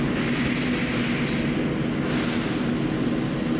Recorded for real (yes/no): yes